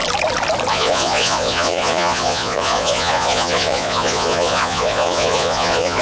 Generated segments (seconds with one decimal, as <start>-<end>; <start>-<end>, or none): 0.7-6.0